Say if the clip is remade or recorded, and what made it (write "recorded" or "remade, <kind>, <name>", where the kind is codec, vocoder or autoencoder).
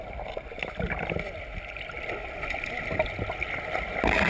recorded